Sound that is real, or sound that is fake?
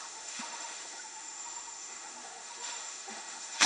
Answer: fake